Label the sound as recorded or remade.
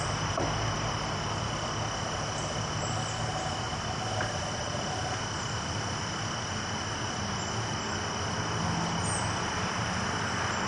recorded